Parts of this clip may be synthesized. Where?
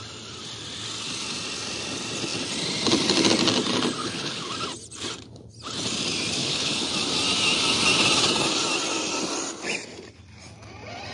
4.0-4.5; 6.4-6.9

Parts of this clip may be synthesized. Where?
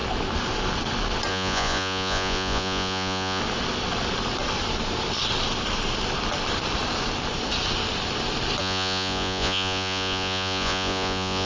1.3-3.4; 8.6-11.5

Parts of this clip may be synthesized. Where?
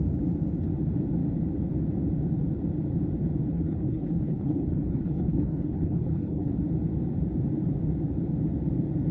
3.5-6.5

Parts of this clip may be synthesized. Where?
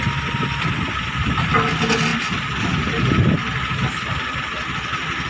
none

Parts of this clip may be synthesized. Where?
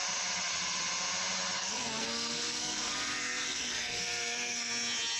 1.6-4.7